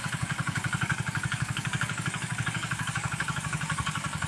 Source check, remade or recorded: remade